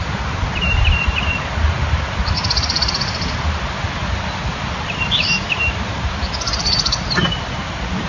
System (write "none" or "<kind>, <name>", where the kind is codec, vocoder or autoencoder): vocoder, BigVGAN v2